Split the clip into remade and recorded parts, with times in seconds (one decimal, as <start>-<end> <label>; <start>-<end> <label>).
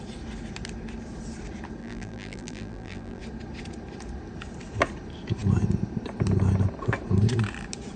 0.0-1.8 recorded; 1.8-3.2 remade; 3.2-8.0 recorded